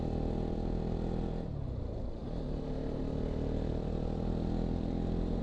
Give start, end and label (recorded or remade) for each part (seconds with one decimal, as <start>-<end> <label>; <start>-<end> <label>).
0.0-5.4 recorded